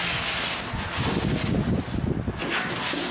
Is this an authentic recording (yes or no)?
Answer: yes